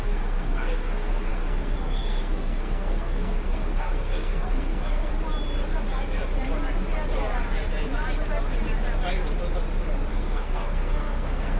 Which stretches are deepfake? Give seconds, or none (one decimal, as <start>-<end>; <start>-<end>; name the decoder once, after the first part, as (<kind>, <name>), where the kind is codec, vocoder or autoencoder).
0.0-5.1 (codec, SNAC); 10.1-11.6

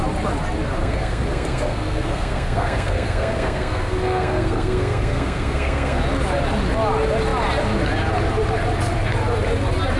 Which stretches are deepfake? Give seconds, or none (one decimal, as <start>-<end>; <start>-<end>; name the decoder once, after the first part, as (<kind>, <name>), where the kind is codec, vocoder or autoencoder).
0.8-6.0 (codec, SNAC)

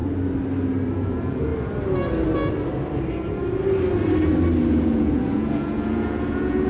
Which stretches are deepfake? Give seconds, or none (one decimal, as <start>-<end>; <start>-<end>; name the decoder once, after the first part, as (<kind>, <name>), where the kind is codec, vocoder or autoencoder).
0.9-1.5 (vocoder, Vocos); 4.7-6.7

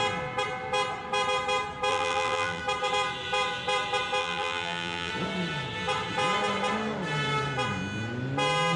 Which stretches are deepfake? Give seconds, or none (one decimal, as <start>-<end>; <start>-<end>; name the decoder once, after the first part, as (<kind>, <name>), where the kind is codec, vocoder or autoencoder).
1.9-2.6 (vocoder, BigVGAN v2); 4.2-5.1